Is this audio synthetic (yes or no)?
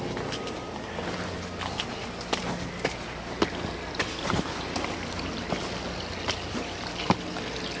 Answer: no